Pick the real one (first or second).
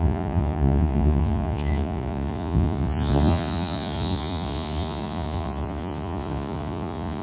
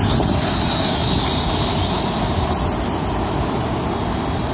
second